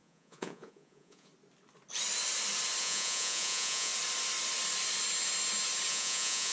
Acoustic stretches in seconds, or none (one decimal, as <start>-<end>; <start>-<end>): 1.3-2.8; 3.9-5.9